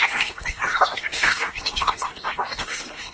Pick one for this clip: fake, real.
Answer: fake